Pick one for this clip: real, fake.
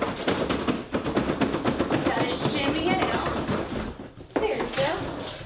real